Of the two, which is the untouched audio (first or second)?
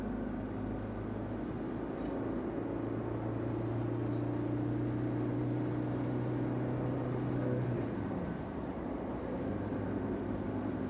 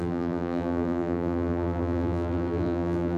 first